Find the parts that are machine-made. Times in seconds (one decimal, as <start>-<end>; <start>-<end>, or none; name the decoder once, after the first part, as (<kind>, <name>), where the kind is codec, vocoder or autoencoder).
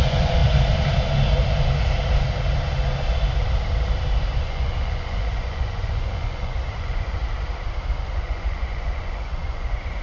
0.0-0.4 (vocoder, Vocos); 4.4-7.2; 8.0-10.0